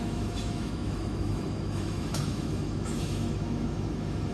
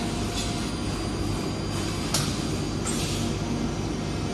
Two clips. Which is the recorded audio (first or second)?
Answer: second